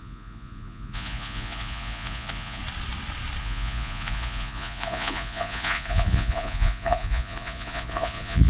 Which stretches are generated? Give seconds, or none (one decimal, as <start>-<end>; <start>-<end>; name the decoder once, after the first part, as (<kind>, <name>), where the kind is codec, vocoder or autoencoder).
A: 0.0-2.6 (vocoder, Vocos); 3.4-8.5